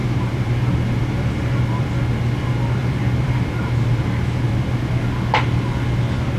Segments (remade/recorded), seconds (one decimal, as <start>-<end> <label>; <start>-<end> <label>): 0.0-1.6 remade; 1.6-2.8 recorded; 2.8-4.5 remade; 4.5-6.4 recorded